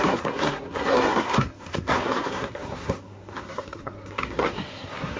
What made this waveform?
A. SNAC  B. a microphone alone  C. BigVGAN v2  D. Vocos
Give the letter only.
A